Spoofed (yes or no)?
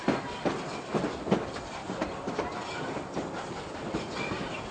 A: no